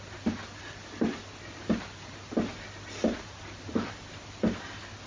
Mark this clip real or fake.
real